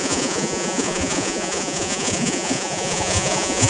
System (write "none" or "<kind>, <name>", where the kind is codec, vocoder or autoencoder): vocoder, Vocos